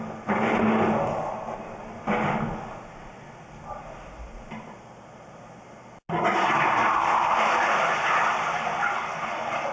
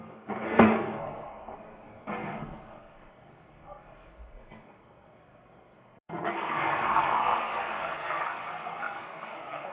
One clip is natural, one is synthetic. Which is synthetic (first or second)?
second